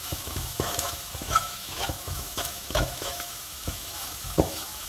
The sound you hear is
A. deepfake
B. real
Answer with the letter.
A